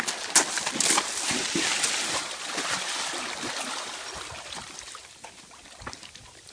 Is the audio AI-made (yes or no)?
no